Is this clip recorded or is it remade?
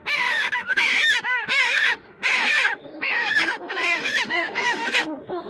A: remade